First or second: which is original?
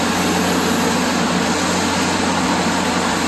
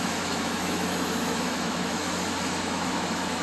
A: first